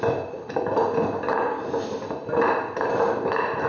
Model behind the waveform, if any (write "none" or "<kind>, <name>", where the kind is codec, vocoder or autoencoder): none